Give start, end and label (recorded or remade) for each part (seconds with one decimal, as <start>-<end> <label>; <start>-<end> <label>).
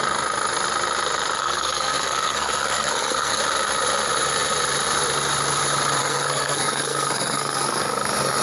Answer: 0.0-1.4 recorded; 1.4-3.4 remade; 3.4-6.0 recorded; 6.0-7.8 remade; 7.8-8.4 recorded